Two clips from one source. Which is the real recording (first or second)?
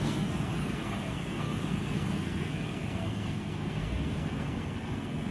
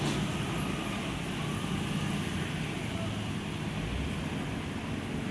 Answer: second